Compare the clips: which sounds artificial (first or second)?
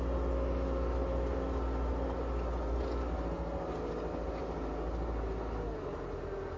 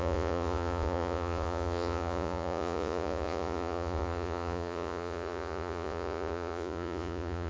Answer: second